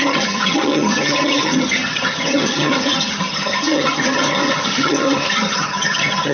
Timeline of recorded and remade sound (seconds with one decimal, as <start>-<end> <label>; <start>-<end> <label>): 0.0-6.3 remade